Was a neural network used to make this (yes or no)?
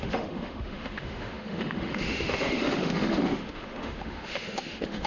yes